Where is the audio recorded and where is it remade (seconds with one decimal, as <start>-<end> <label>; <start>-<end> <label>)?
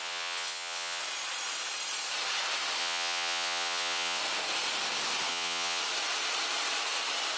0.0-1.0 remade; 1.0-2.8 recorded; 2.8-4.2 remade; 4.2-5.3 recorded; 5.3-5.8 remade; 5.8-7.4 recorded